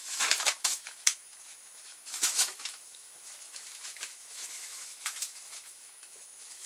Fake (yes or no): yes